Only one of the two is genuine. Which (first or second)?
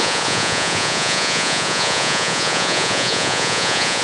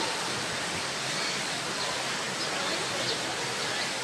second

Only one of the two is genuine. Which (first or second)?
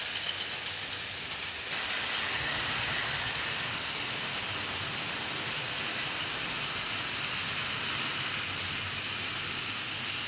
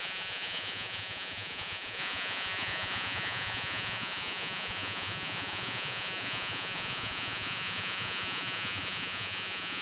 first